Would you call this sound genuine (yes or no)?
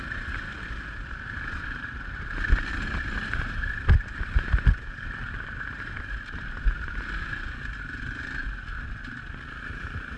yes